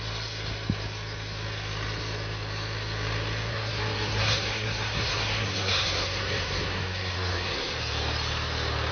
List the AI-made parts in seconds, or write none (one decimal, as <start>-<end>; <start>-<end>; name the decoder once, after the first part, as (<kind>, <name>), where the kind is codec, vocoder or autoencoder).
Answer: 3.5-7.7 (codec, SNAC)